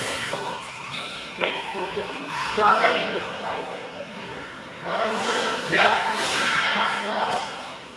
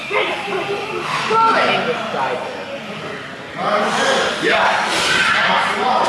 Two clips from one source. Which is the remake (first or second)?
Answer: first